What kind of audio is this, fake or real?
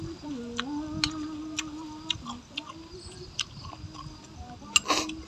real